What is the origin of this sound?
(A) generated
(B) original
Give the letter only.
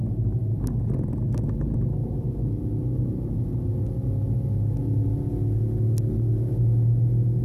B